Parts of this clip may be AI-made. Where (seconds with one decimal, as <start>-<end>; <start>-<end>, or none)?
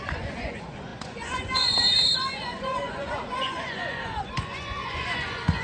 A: 0.0-5.6